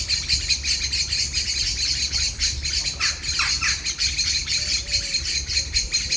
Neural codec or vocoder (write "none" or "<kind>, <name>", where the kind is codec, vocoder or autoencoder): none